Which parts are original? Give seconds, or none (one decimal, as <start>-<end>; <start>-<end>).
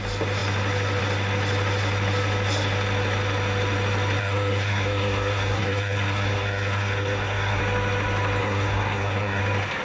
0.0-4.2; 7.6-8.4; 9.4-9.8